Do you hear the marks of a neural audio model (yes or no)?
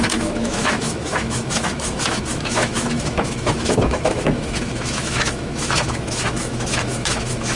yes